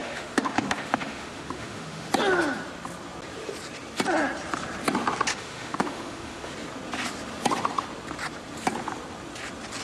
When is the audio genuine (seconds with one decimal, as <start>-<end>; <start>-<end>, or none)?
2.1-5.3; 6.5-9.8